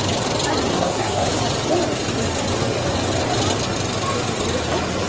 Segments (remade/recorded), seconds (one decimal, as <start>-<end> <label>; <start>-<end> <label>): 0.0-0.7 recorded; 0.7-1.3 remade; 1.3-5.1 recorded